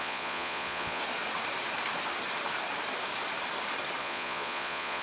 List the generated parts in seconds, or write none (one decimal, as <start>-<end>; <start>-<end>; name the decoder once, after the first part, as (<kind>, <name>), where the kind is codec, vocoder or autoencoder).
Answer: 0.0-1.0 (vocoder, Vocos); 4.0-5.0